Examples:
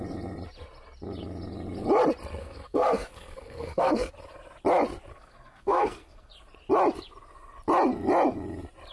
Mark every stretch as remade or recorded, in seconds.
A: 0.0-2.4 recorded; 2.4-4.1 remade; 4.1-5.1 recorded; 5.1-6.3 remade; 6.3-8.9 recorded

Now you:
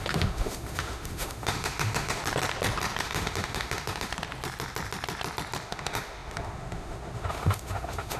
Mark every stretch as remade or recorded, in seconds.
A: 0.0-2.2 remade; 2.2-3.0 recorded; 3.0-4.1 remade; 4.1-5.6 recorded; 5.6-8.2 remade

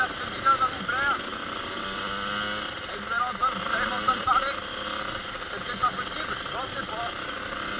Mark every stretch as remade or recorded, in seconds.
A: 0.0-7.8 recorded

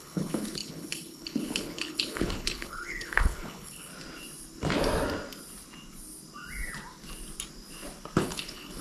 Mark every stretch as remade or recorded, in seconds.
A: 0.0-3.9 remade; 3.9-8.2 recorded; 8.2-8.8 remade

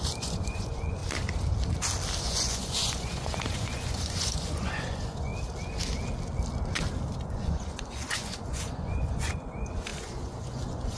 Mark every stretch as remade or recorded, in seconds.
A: 0.0-1.0 remade; 1.0-2.2 recorded; 2.2-5.3 remade; 5.3-7.2 recorded; 7.2-11.0 remade

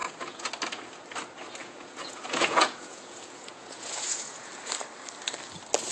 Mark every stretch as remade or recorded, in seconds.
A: 0.0-0.5 remade; 0.5-1.6 recorded; 1.6-4.5 remade; 4.5-5.9 recorded

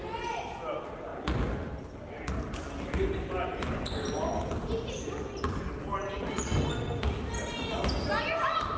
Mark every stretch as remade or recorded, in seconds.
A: 0.0-8.8 recorded